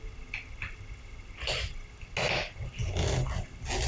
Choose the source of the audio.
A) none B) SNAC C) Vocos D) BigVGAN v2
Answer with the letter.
A